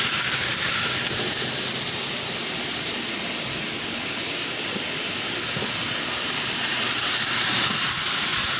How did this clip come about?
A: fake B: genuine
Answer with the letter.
B